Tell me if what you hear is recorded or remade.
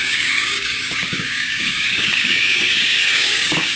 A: remade